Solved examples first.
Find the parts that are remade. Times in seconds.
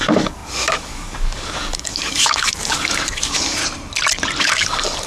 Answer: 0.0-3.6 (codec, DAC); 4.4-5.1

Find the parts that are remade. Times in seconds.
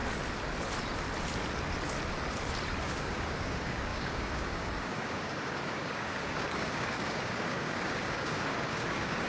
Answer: 2.8-9.3 (codec, DAC)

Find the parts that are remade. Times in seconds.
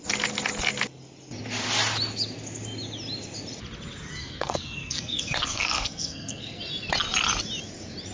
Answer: 4.2-6.6 (codec, SNAC)